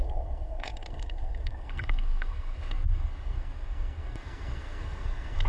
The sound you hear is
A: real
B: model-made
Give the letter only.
B